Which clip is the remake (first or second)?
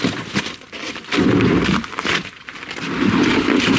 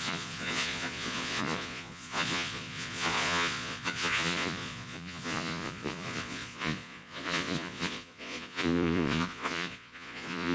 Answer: second